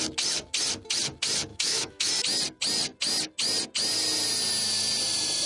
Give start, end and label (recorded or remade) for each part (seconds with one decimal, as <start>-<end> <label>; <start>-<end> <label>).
0.0-1.5 recorded; 1.5-2.1 remade; 2.1-5.5 recorded